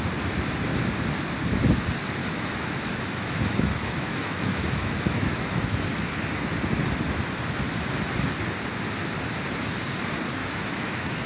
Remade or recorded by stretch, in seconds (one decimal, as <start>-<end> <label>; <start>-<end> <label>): 0.0-2.2 recorded; 2.2-5.8 remade; 5.8-10.4 recorded; 10.4-11.3 remade